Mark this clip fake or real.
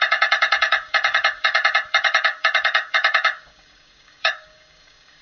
fake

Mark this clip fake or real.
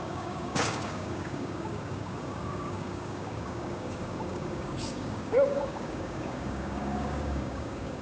fake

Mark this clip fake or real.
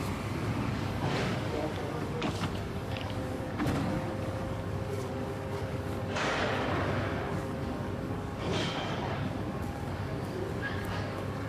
fake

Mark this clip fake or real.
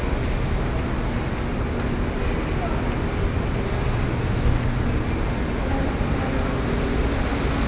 real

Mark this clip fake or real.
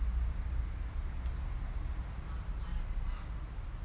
real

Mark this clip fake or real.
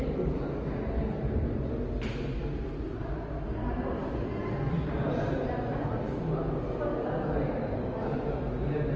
real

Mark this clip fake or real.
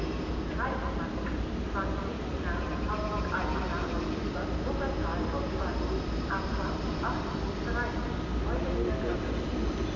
real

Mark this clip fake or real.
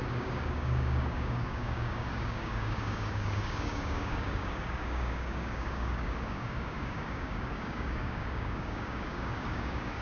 fake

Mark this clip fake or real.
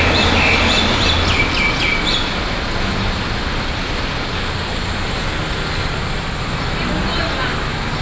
real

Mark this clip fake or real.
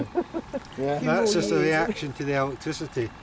real